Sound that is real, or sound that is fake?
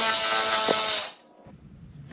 real